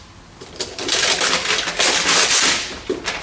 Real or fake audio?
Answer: real